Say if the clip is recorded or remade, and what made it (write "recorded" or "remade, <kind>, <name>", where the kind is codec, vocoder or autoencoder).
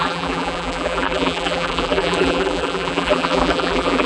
remade, vocoder, BigVGAN v2